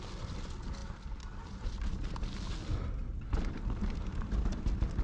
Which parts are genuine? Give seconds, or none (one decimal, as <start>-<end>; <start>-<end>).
0.0-5.0

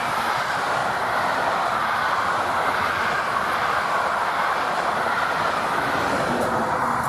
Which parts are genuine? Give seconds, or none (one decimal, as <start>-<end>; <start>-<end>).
0.0-0.8; 5.1-7.1

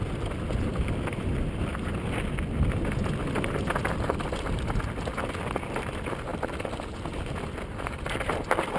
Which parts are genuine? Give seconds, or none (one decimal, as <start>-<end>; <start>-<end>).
0.0-8.8

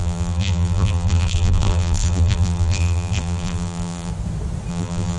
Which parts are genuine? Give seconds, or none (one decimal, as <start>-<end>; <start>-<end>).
4.1-4.7

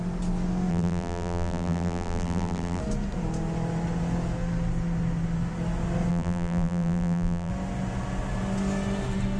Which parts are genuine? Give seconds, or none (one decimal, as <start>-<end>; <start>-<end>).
0.0-0.7; 2.8-6.1; 7.5-9.4

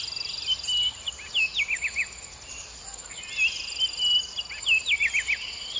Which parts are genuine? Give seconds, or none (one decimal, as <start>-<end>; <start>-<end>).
0.0-5.8

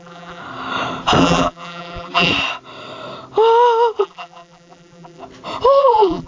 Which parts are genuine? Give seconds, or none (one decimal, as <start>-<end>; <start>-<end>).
0.4-1.2; 2.3-4.0; 5.2-5.8